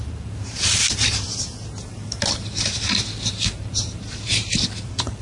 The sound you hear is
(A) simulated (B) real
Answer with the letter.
A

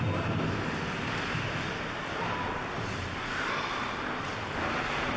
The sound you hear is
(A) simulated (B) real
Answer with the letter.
B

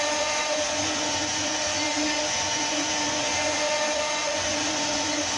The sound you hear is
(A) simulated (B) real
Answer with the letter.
A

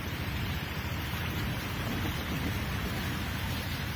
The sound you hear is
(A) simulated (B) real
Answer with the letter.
A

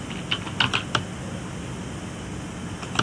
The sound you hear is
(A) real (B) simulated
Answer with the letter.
A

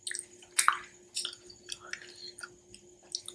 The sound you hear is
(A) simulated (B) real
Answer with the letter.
B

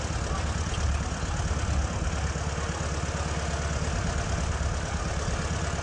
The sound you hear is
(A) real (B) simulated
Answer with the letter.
A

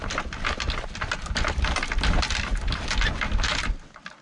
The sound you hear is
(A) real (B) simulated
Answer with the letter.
A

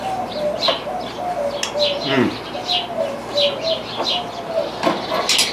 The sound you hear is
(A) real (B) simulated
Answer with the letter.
A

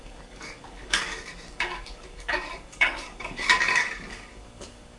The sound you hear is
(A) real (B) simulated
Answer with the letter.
B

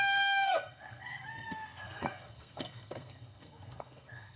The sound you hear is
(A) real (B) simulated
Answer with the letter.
B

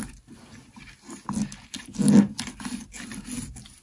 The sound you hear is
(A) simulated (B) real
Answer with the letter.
B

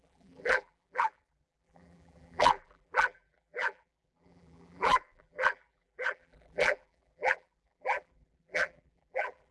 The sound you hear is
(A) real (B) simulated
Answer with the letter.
B